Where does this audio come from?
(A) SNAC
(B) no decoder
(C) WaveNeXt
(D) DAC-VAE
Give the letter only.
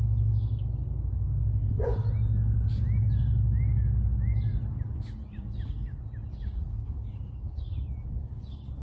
B